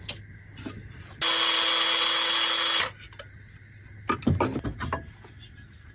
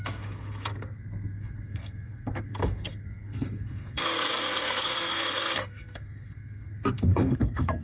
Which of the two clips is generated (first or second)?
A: second